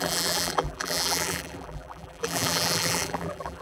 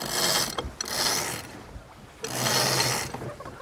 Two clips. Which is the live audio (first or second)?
second